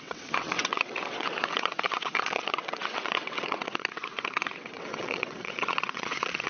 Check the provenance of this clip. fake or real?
fake